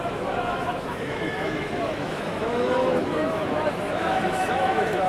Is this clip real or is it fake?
fake